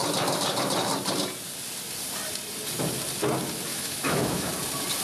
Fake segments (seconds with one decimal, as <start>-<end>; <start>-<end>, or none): 3.7-4.5